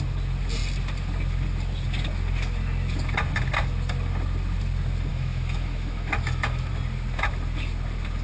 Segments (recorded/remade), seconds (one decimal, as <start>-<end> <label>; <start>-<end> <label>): 0.0-5.1 recorded; 5.1-6.7 remade; 6.7-8.2 recorded